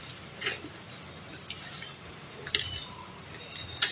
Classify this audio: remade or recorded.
recorded